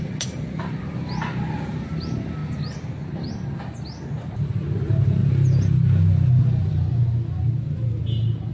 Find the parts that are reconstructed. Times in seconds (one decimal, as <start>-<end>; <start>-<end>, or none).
none